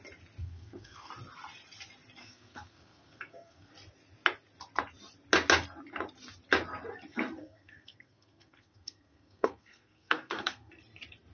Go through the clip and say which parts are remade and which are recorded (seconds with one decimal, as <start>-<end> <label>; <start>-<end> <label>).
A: 0.0-0.4 recorded; 0.4-1.1 remade; 1.1-2.2 recorded; 2.2-3.7 remade; 3.7-7.4 recorded; 7.4-10.7 remade; 10.7-11.3 recorded

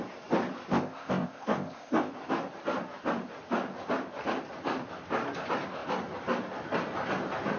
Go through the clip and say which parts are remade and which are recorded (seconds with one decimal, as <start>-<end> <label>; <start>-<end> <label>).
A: 0.0-0.7 recorded; 0.7-2.1 remade; 2.1-7.6 recorded

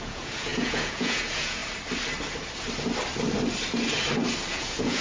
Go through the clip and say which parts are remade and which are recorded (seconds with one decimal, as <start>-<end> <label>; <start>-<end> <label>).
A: 0.0-1.6 remade; 1.6-4.5 recorded; 4.5-5.0 remade

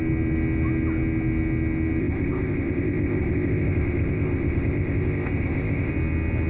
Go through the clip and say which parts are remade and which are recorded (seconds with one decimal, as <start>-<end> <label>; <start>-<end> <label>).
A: 0.0-2.0 recorded; 2.0-5.9 remade; 5.9-6.5 recorded

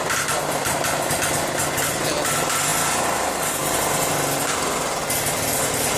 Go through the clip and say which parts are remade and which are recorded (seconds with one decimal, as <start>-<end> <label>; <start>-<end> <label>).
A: 0.0-6.0 recorded

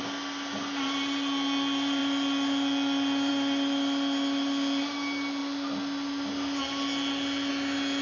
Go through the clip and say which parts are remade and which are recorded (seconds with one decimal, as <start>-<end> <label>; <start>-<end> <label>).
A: 0.0-8.0 recorded

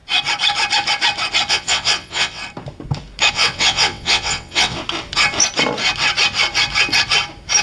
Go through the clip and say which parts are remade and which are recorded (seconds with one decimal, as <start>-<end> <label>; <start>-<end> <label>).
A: 0.0-1.5 recorded; 1.5-2.4 remade; 2.4-3.3 recorded; 3.3-4.8 remade; 4.8-7.6 recorded

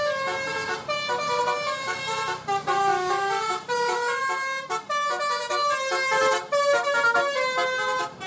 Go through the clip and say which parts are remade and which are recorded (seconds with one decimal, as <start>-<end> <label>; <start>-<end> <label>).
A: 0.0-8.3 recorded